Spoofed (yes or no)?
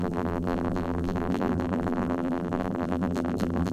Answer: yes